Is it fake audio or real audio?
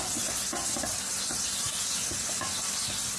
real